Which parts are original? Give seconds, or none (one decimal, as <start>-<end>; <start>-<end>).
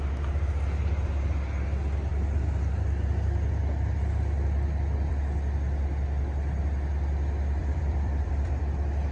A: 0.0-7.6; 8.6-9.1